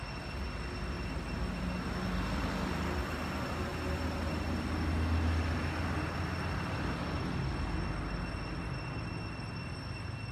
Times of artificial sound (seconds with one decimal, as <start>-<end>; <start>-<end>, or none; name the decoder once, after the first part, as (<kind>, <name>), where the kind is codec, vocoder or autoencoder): none